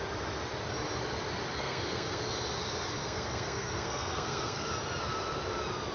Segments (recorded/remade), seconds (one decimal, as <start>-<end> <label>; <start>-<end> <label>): 0.0-1.5 recorded; 1.5-2.2 remade; 2.2-3.0 recorded; 3.0-4.7 remade; 4.7-5.9 recorded